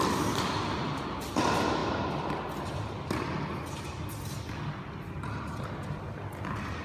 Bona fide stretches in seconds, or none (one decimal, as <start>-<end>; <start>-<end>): 0.0-6.8